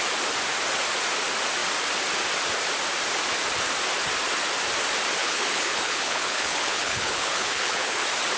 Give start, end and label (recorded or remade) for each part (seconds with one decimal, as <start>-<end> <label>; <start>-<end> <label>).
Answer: 0.0-5.2 recorded; 5.2-8.0 remade; 8.0-8.4 recorded